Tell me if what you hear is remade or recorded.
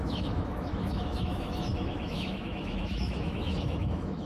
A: remade